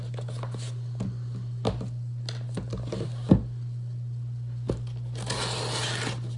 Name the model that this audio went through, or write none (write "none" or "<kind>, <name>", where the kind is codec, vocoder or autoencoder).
none